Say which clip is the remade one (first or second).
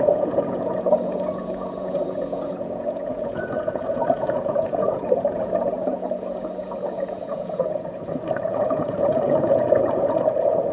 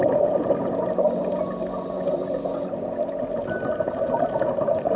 first